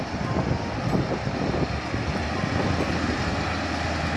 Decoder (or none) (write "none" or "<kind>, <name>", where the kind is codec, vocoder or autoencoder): none